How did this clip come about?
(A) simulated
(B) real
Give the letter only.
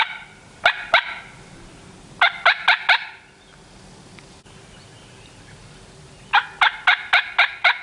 B